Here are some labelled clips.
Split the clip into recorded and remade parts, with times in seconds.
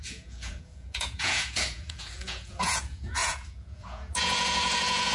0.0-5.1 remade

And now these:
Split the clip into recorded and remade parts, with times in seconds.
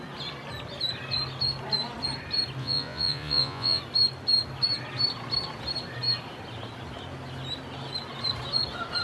0.0-2.6 recorded; 2.6-3.8 remade; 3.8-9.0 recorded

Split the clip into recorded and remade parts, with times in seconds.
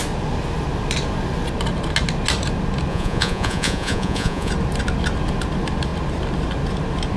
0.0-2.9 recorded; 2.9-4.5 remade; 4.5-7.2 recorded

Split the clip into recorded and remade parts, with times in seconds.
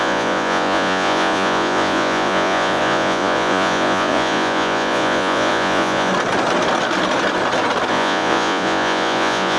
0.0-6.1 remade; 6.1-7.9 recorded; 7.9-9.6 remade